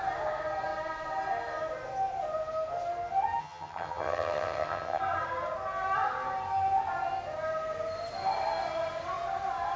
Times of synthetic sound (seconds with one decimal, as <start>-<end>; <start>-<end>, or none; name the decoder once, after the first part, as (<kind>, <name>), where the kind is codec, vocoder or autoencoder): 3.4-5.0 (vocoder, HiFi-GAN)